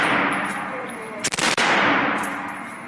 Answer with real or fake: fake